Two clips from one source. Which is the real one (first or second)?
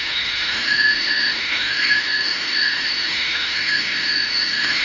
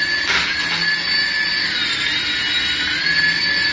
second